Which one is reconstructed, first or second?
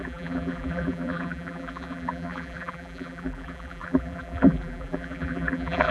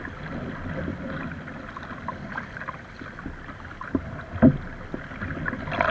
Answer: first